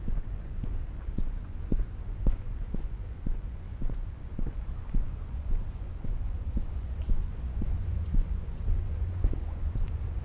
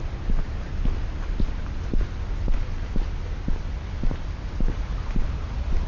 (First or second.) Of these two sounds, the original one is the second